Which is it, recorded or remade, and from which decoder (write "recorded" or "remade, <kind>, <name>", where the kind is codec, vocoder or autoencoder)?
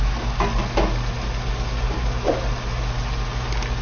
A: recorded